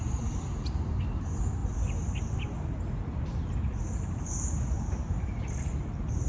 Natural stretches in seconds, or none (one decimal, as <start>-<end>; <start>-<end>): none